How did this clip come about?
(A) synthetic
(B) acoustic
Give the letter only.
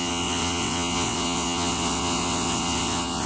A